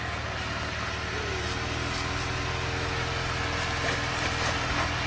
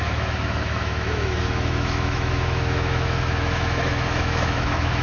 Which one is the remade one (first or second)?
second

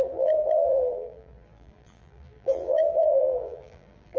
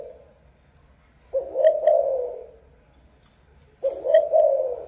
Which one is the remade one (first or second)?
first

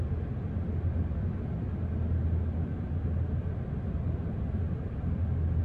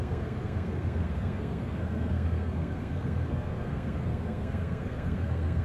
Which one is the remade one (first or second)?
second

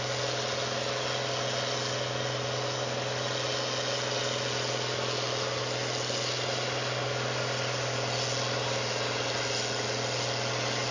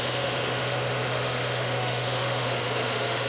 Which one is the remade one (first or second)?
second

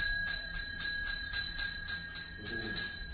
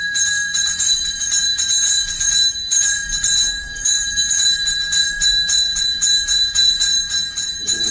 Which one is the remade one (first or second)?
second